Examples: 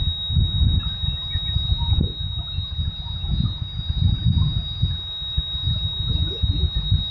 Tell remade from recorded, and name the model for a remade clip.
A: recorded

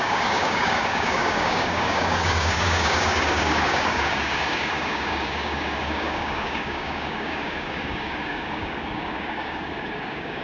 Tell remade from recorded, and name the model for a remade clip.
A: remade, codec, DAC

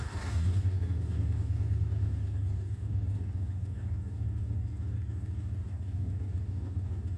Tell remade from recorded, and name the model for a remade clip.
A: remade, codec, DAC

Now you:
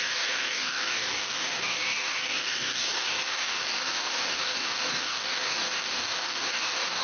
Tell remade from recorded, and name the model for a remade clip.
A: remade, codec, DAC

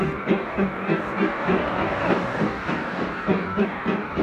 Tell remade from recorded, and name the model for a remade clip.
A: remade, codec, DAC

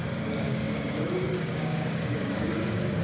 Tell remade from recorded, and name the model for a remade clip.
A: remade, codec, DAC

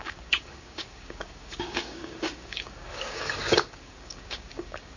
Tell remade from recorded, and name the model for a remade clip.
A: remade, codec, DAC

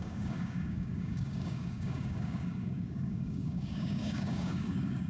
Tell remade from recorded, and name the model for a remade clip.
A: remade, codec, DAC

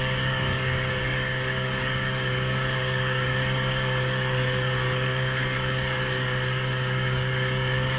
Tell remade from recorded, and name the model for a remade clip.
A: remade, codec, DAC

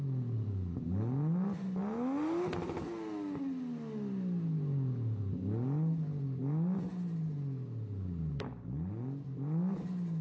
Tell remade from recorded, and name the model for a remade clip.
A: recorded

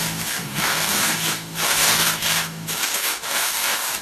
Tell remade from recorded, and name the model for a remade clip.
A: remade, codec, DAC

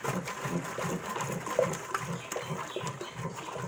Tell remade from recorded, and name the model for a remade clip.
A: recorded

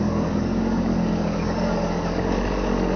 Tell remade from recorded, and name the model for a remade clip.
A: remade, codec, DAC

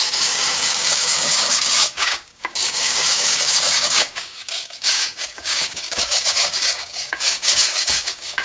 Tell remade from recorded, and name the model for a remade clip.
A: remade, codec, DAC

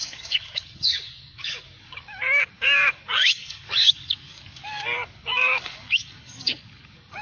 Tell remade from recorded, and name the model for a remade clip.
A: remade, codec, DAC